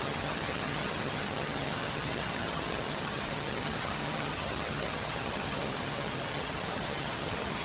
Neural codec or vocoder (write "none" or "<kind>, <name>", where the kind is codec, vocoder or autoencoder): vocoder, HiFi-GAN